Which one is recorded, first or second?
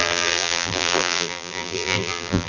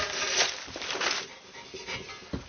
second